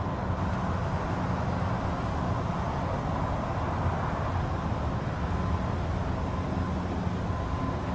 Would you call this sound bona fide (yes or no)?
yes